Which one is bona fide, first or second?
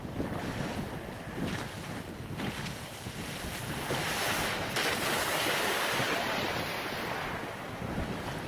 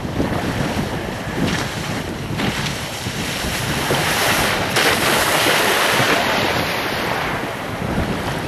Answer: first